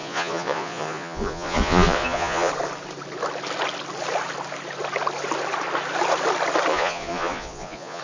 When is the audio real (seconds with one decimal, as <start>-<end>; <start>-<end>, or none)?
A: 2.5-6.7